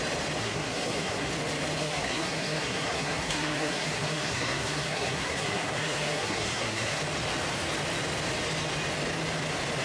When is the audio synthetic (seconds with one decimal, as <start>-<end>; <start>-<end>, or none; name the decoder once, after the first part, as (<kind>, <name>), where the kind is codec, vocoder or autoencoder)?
0.4-1.3 (codec, SNAC); 1.8-7.0